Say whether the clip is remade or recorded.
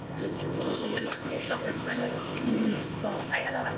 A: remade